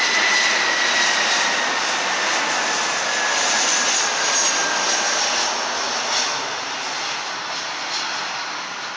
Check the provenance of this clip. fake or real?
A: real